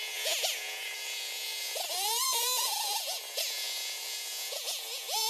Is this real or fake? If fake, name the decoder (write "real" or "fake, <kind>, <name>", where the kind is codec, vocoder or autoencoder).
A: fake, vocoder, Vocos